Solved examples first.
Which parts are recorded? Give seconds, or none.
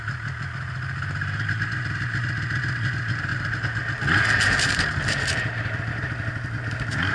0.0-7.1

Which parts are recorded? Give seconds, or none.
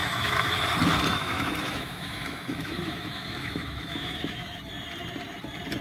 0.5-1.1; 4.6-5.8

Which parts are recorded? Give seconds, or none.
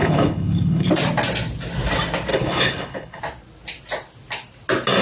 0.9-2.3; 3.2-5.0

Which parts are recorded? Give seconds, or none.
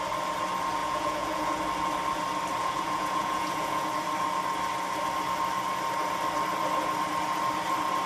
0.0-0.8; 1.6-2.6; 3.9-8.1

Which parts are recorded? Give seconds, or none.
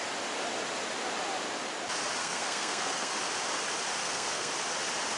0.0-2.2; 3.1-4.0; 4.5-5.2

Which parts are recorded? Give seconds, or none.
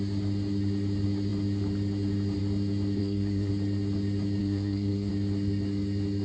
0.0-3.0; 3.5-4.4; 5.1-6.2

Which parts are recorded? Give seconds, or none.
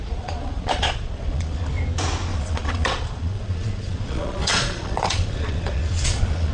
1.7-2.3